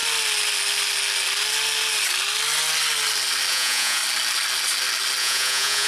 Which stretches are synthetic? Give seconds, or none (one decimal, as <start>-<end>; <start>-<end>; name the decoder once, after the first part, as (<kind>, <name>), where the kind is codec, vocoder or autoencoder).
3.5-4.0 (vocoder, Vocos); 5.2-5.9